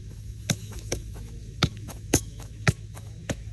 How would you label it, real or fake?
fake